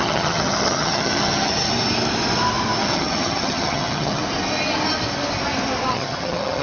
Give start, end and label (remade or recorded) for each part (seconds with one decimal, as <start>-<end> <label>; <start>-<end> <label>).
0.0-1.7 remade; 1.7-2.8 recorded; 2.8-4.2 remade; 4.2-5.9 recorded; 5.9-6.6 remade